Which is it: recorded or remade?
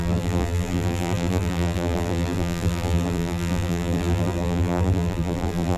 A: remade